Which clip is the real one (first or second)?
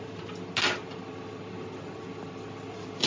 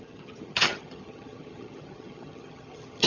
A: first